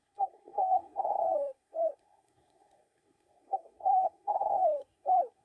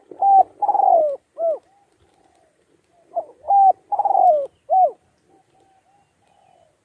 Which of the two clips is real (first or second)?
second